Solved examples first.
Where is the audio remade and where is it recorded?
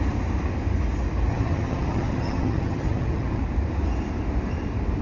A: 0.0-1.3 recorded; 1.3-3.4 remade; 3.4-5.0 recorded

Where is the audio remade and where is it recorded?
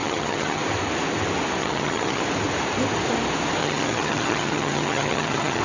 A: 0.0-0.6 remade; 0.6-1.6 recorded; 1.6-2.2 remade; 2.2-3.6 recorded; 3.6-5.6 remade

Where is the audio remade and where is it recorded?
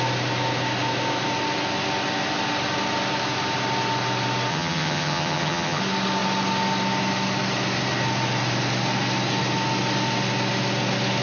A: 0.0-4.5 recorded; 4.5-5.8 remade; 5.8-11.2 recorded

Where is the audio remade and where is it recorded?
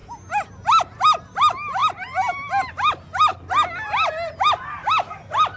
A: 0.0-5.6 recorded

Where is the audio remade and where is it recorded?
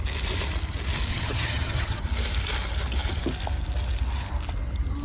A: 0.0-1.1 recorded; 1.1-2.0 remade; 2.0-5.0 recorded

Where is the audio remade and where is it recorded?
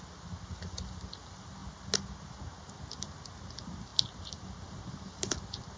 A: 0.0-5.8 recorded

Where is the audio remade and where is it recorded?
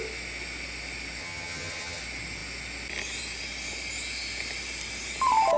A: 0.0-1.2 recorded; 1.2-2.0 remade; 2.0-5.6 recorded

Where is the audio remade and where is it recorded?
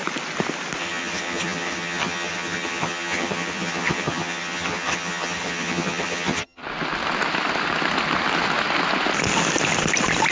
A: 0.0-0.8 recorded; 0.8-6.6 remade; 6.6-10.3 recorded